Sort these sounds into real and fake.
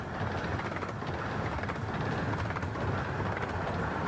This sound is real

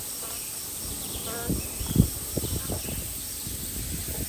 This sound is real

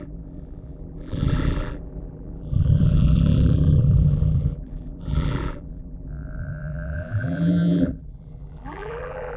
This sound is fake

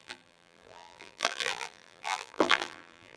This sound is fake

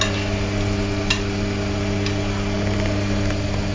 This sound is real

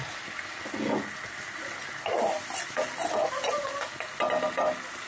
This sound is real